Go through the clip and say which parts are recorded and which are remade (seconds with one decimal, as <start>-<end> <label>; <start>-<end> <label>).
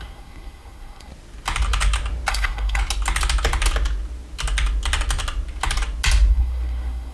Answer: 0.0-1.1 remade; 1.1-2.3 recorded; 2.3-2.8 remade; 2.8-6.3 recorded; 6.3-7.1 remade